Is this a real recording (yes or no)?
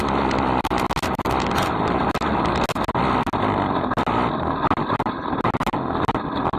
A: yes